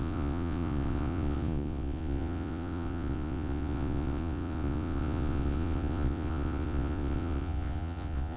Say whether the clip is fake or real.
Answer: fake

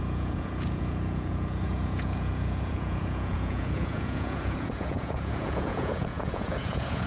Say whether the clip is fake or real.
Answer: fake